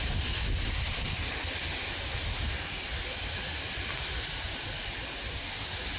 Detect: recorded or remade recorded